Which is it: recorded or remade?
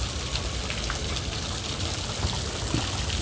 recorded